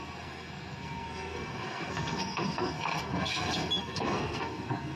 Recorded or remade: remade